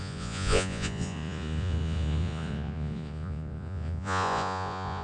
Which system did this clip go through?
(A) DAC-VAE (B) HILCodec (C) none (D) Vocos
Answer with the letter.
D